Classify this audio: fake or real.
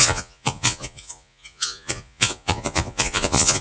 fake